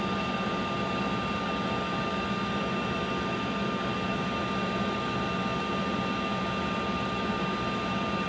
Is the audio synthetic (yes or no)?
no